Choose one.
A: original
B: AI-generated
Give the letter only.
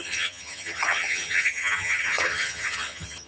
B